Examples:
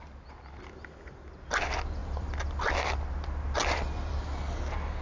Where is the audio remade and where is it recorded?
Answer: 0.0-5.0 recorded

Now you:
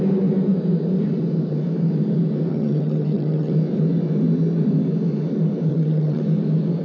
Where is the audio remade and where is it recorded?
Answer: 0.0-2.5 recorded; 2.5-3.5 remade; 3.5-5.7 recorded; 5.7-6.2 remade; 6.2-6.8 recorded

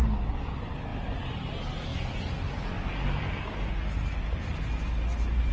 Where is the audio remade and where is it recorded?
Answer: 0.0-5.5 recorded

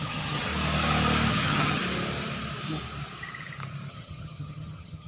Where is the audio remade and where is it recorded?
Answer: 0.0-0.5 remade; 0.5-1.3 recorded; 1.3-1.8 remade; 1.8-3.9 recorded; 3.9-5.1 remade